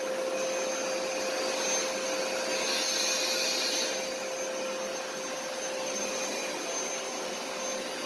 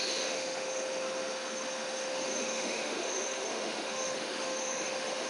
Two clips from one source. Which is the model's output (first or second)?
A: second